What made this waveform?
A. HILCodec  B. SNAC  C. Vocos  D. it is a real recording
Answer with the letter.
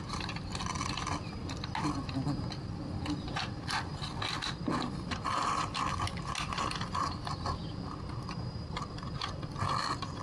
D